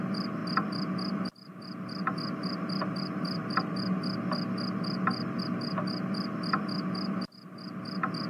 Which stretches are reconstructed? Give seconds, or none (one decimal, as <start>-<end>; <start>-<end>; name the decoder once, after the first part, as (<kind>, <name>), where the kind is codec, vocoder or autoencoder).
none